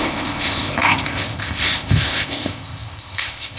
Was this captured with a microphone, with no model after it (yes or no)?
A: no